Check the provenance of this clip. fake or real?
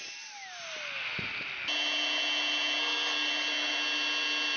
real